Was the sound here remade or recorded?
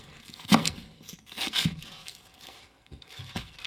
remade